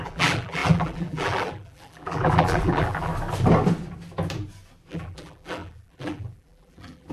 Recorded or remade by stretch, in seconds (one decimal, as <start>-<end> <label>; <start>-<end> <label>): 0.0-3.1 remade; 3.1-4.9 recorded; 4.9-7.1 remade